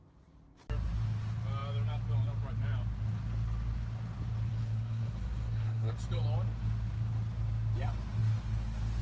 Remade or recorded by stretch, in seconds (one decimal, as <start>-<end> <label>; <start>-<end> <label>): 0.0-4.5 recorded; 4.5-5.9 remade; 5.9-9.0 recorded